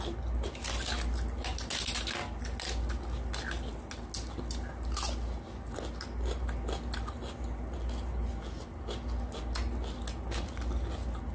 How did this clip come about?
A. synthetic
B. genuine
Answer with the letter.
B